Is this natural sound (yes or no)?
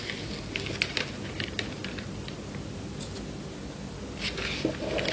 yes